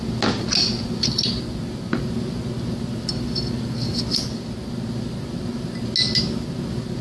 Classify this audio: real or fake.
real